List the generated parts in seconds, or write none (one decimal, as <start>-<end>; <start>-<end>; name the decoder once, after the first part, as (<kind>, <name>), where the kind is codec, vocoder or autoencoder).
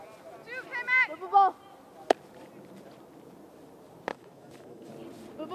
4.1-4.9 (autoencoder, DAC-VAE)